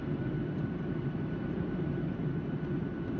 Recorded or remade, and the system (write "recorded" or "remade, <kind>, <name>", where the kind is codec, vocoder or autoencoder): remade, vocoder, BigVGAN v2